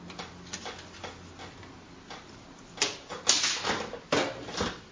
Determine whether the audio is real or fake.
real